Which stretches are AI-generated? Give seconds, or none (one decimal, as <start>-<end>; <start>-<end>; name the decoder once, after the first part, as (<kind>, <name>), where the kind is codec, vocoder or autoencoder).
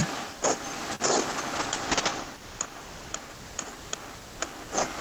0.0-0.9 (vocoder, BigVGAN v2); 2.1-3.8